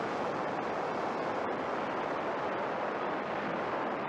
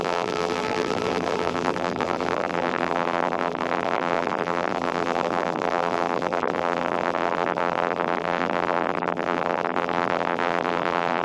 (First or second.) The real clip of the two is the first